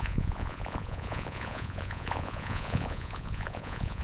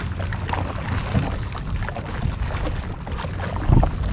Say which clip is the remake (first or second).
first